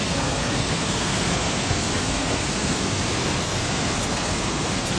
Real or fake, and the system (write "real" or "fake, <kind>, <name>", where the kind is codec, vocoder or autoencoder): fake, codec, SNAC